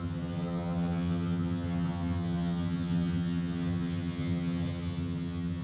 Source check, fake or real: fake